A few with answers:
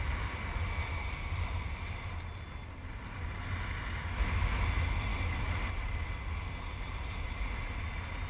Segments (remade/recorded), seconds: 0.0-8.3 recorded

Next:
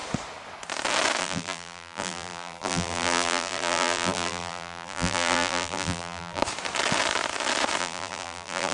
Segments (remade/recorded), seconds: 0.0-1.2 recorded; 1.2-6.4 remade; 6.4-7.8 recorded; 7.8-8.7 remade